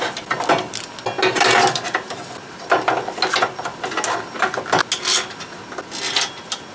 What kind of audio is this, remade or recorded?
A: recorded